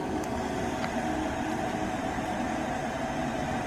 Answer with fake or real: real